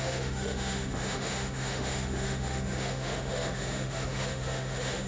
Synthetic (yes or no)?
yes